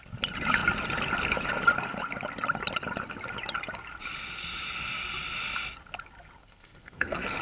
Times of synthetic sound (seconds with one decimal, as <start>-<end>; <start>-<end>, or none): 6.4-7.4